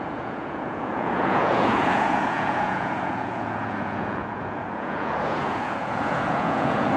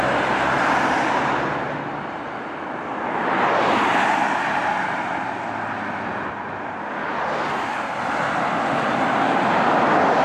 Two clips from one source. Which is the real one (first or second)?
second